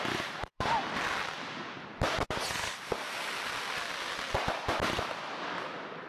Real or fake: real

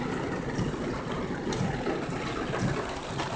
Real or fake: real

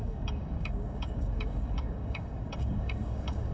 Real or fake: fake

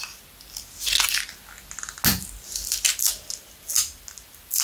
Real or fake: real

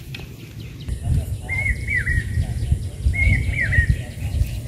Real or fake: real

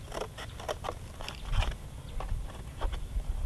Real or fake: real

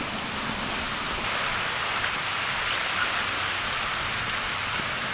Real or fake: real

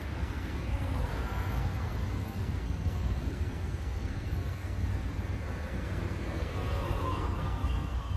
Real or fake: fake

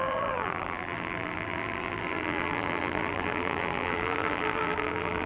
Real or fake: fake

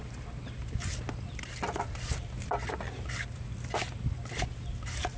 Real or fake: real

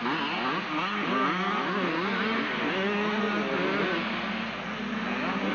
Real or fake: real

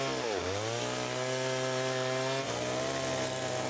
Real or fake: real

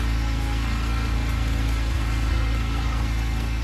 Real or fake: fake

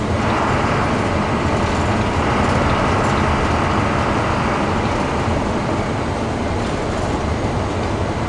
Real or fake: real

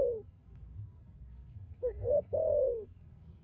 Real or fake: fake